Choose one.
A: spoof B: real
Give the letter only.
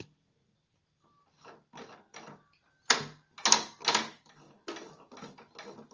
B